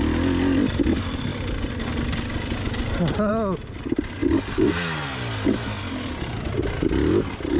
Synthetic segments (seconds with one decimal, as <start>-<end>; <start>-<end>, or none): none